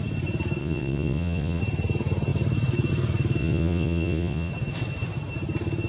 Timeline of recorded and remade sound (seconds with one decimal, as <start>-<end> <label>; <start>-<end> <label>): 0.0-0.6 recorded; 0.6-1.6 remade; 1.6-3.4 recorded; 3.4-4.5 remade; 4.5-5.9 recorded